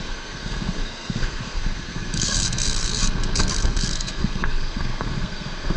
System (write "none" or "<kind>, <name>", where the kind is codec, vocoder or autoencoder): codec, SNAC